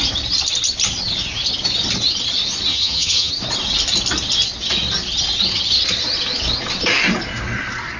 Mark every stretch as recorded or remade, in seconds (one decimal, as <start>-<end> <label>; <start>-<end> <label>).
0.0-2.7 recorded; 2.7-3.3 remade; 3.3-8.0 recorded